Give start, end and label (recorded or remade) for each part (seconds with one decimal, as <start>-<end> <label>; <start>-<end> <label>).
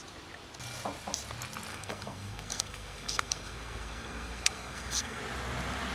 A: 0.0-1.7 recorded; 1.7-5.2 remade; 5.2-5.9 recorded